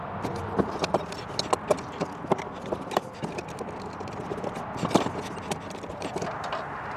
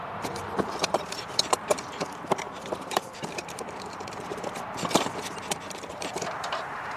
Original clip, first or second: first